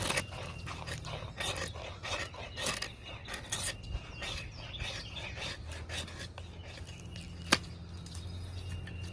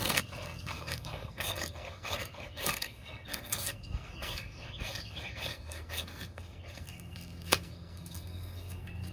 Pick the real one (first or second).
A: first